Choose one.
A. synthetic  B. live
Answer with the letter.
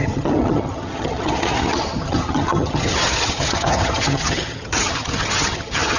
A